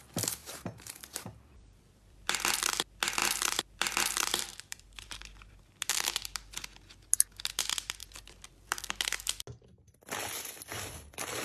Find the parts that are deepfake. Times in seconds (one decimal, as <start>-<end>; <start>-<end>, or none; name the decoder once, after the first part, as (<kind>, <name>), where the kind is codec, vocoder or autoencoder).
0.4-2.6 (vocoder, BigVGAN v2); 3.2-5.6; 8.0-8.8